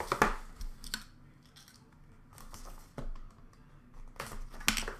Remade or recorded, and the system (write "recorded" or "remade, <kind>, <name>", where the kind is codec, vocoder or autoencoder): recorded